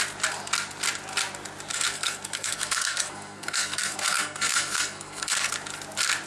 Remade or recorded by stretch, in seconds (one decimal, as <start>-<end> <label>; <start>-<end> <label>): 0.0-1.7 recorded; 1.7-5.5 remade; 5.5-6.3 recorded